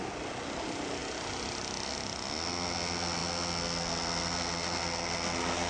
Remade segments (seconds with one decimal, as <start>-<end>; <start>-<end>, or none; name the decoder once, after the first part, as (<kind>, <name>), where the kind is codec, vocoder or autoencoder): none